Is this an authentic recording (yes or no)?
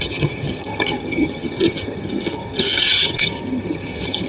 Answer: no